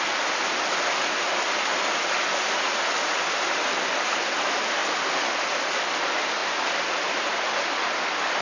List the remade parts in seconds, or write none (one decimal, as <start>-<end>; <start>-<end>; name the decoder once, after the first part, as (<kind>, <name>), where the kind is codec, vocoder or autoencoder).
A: none